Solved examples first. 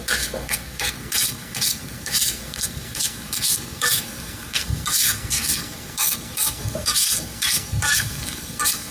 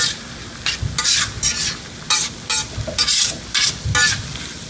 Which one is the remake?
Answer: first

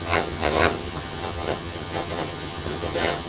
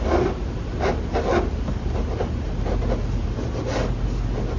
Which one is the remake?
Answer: first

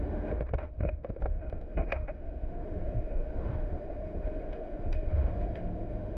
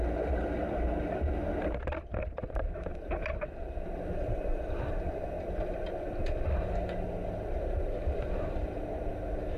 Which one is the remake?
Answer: first